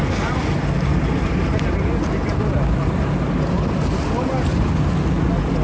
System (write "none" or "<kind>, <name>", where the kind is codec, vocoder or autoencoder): none